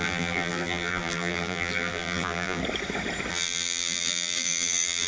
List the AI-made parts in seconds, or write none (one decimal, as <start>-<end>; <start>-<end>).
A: 0.0-2.6; 3.3-5.1